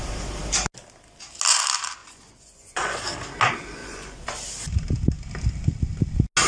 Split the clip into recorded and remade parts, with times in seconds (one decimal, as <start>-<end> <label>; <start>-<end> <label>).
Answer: 0.0-2.0 recorded; 2.0-3.0 remade; 3.0-3.8 recorded; 3.8-4.5 remade; 4.5-6.5 recorded